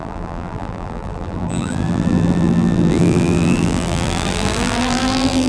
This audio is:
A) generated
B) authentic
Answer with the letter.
A